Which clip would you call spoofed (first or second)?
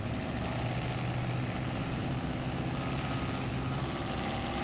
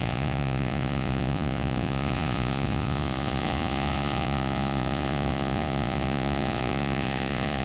second